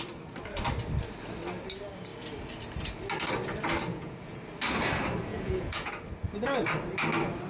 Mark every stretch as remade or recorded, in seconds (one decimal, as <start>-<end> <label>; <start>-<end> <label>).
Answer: 0.0-3.9 recorded; 3.9-4.4 remade; 4.4-5.3 recorded; 5.3-5.9 remade; 5.9-7.5 recorded